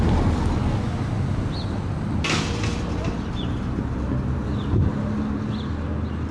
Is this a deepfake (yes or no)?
no